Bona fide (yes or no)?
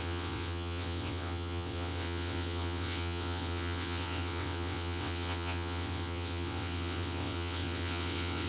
no